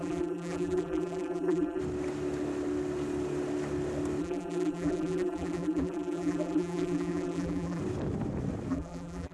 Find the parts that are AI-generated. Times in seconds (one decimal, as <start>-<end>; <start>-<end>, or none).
0.0-1.8; 4.2-7.8; 8.7-9.3